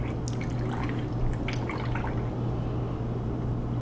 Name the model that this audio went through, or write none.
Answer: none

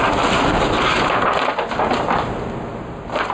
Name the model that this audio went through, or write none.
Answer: none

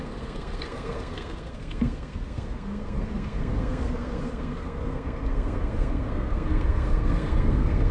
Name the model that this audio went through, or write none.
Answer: codec, SNAC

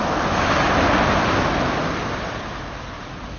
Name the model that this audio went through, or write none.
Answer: none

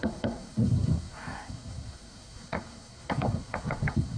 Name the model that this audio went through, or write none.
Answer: codec, SNAC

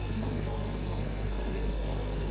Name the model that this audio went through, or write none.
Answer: codec, SNAC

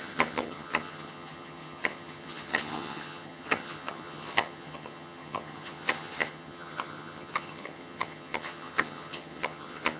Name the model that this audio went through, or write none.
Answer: vocoder, HiFi-GAN